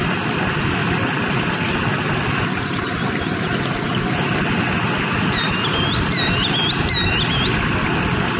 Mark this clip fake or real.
real